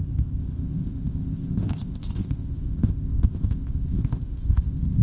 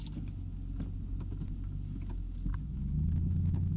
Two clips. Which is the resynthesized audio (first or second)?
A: first